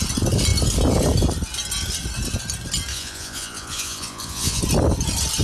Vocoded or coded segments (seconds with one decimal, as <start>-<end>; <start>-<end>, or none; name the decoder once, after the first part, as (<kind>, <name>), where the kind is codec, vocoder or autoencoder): 2.9-4.6 (vocoder, Vocos)